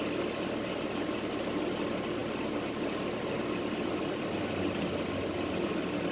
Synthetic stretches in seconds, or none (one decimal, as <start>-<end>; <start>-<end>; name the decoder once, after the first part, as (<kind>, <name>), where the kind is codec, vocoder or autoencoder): none